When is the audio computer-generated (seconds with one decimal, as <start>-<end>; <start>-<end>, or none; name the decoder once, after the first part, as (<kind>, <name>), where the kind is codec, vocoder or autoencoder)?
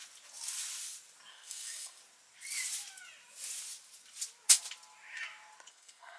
1.3-2.0 (codec, SNAC); 5.7-6.2